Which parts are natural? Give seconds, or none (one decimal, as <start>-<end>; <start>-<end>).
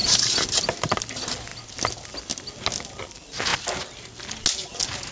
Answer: 0.6-5.1